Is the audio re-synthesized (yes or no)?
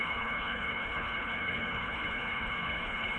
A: yes